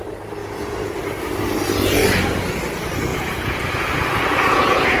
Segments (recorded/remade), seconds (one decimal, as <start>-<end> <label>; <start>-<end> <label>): 0.0-0.4 recorded; 0.4-1.0 remade; 1.0-3.1 recorded; 3.1-5.0 remade